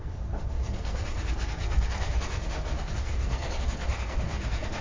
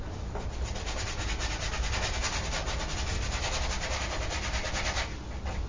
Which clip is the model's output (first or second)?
first